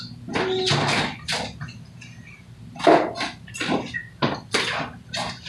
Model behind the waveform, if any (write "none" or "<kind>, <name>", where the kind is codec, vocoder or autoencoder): none